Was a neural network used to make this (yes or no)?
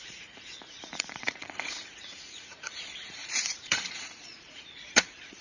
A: yes